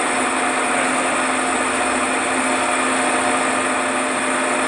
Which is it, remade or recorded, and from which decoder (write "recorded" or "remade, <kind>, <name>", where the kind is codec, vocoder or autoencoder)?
recorded